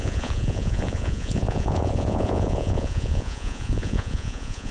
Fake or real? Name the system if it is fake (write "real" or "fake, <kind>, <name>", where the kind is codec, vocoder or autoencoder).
fake, vocoder, Vocos